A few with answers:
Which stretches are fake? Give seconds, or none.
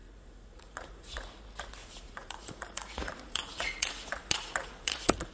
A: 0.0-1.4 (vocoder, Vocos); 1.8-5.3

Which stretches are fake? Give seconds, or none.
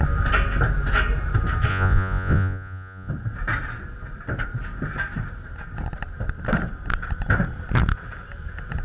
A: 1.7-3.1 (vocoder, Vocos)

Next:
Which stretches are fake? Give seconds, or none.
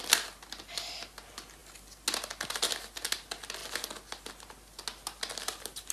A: none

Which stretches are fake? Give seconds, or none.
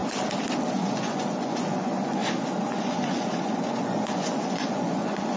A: 0.7-2.2 (vocoder, Vocos); 2.8-5.4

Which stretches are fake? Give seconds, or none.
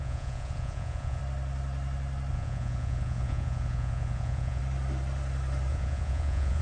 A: 0.0-1.2 (vocoder, Vocos); 2.3-4.6; 5.7-6.6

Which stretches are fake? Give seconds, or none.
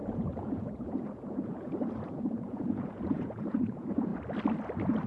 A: 0.0-4.1 (vocoder, Vocos)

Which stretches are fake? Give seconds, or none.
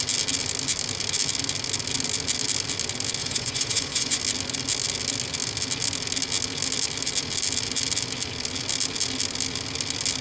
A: 3.2-4.2 (vocoder, Vocos)